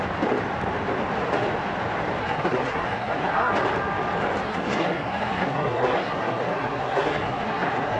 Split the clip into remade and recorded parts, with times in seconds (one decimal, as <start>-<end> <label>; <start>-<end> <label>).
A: 0.0-2.2 recorded; 2.2-3.5 remade; 3.5-4.4 recorded; 4.4-8.0 remade